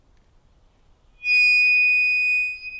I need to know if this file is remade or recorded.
recorded